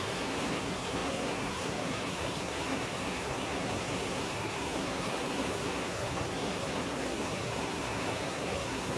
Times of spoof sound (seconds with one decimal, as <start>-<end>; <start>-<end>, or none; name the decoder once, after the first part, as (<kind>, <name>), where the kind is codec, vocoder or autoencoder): 0.0-9.0 (codec, SNAC)

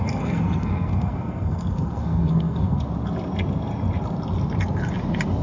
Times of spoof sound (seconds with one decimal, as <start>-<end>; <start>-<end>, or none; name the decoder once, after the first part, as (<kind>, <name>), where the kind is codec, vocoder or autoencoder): 0.0-2.8 (codec, SNAC)

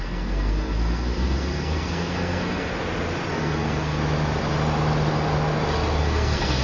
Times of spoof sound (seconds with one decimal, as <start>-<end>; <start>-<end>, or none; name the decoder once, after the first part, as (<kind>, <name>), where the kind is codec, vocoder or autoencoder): 0.0-2.7 (codec, SNAC); 3.3-4.0; 6.0-6.6

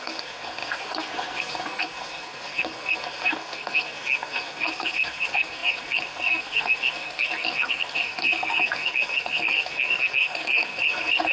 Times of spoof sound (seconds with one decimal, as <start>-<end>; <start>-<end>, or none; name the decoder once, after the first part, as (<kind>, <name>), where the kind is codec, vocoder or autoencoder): 0.0-11.3 (codec, SNAC)

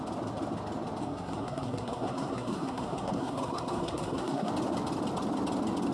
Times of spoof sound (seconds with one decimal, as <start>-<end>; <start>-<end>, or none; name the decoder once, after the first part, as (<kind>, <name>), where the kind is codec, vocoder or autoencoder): 1.0-4.5 (codec, SNAC)

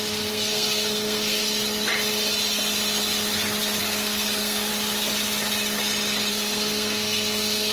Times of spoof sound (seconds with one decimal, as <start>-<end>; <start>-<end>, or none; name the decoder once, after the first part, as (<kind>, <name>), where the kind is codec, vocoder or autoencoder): 0.0-1.4 (codec, SNAC); 3.8-4.7; 6.3-7.7